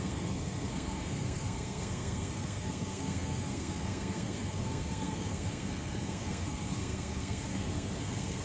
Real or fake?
fake